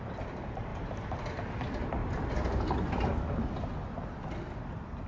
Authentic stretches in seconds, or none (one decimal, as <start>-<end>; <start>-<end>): 0.0-0.7; 1.3-5.1